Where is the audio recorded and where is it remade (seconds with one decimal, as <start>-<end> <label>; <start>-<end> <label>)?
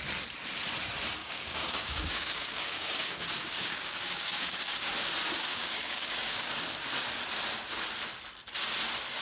0.0-1.2 recorded; 1.2-4.9 remade; 4.9-5.5 recorded; 5.5-6.5 remade; 6.5-9.2 recorded